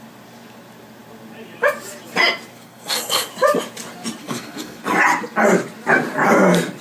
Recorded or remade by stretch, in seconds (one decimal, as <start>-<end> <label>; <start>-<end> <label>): 0.0-2.5 recorded; 2.5-3.3 remade; 3.3-4.2 recorded; 4.2-4.8 remade; 4.8-6.8 recorded